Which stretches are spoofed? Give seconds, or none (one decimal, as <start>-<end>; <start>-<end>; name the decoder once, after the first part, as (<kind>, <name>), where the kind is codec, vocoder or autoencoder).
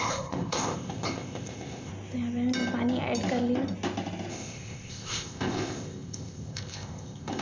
0.0-1.9 (codec, ZipCodec); 4.3-7.4